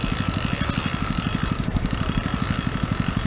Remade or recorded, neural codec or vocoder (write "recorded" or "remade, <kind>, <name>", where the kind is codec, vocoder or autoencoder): recorded